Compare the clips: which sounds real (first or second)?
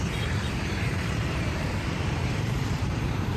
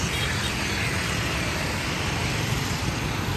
second